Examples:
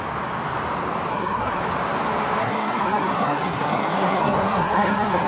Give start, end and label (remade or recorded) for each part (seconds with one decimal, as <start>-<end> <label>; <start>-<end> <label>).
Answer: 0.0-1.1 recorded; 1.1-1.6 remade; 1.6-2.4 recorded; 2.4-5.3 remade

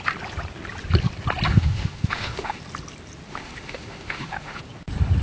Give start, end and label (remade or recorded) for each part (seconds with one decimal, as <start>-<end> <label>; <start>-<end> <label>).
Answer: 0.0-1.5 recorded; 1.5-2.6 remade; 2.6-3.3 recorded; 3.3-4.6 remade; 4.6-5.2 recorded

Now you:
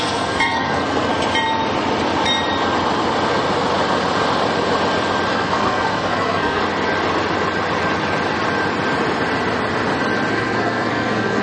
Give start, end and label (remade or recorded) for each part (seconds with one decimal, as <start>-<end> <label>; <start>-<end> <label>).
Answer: 0.0-1.1 remade; 1.1-5.3 recorded; 5.3-6.6 remade; 6.6-10.3 recorded; 10.3-11.4 remade

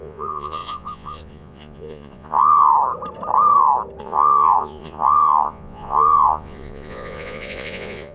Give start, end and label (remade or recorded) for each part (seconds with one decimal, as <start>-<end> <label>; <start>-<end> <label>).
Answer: 0.0-2.7 remade; 2.7-4.0 recorded; 4.0-8.1 remade